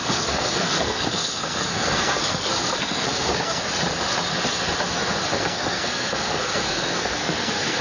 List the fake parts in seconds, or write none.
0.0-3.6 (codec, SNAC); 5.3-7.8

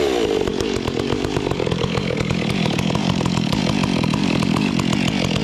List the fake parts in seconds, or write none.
0.5-3.6 (codec, DAC); 4.2-4.7

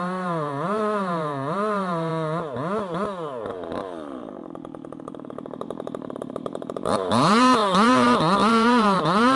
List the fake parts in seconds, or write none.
0.0-2.1 (vocoder, BigVGAN v2); 3.5-4.4; 5.1-9.4